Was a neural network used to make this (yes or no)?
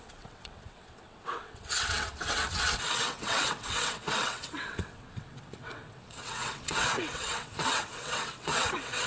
yes